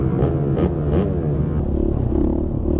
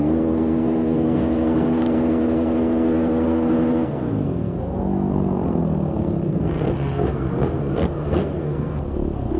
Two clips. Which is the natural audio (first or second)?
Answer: first